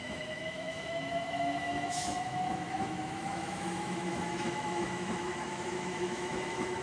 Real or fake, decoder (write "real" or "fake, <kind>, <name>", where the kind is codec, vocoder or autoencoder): fake, autoencoder, DAC-VAE